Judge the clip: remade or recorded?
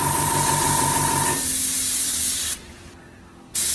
remade